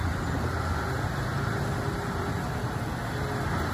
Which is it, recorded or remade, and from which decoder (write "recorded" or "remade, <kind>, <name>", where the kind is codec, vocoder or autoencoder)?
recorded